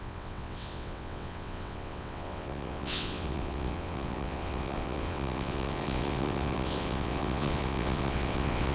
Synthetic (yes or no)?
yes